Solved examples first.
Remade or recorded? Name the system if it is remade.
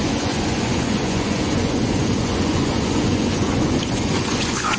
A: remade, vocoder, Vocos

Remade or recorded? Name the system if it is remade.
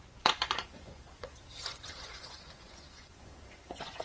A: remade, vocoder, Vocos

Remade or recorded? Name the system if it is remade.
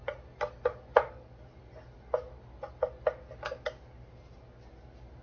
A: recorded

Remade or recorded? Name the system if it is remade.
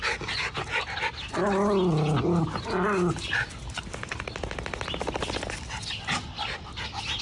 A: recorded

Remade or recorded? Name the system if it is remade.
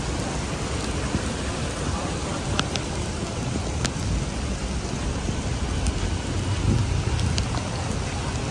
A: recorded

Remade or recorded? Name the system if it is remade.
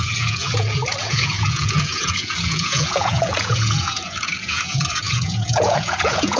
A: remade, vocoder, Vocos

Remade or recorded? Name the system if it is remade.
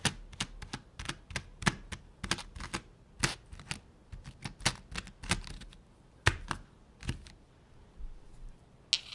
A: recorded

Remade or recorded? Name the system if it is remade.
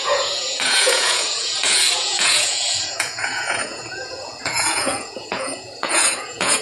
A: remade, vocoder, Vocos